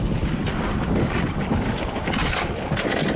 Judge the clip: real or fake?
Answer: real